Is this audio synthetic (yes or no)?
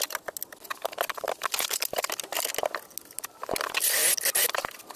no